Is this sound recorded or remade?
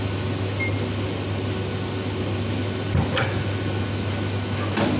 recorded